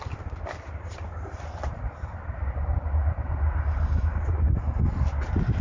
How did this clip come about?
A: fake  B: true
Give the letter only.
B